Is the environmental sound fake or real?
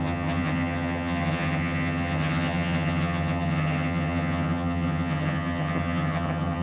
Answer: fake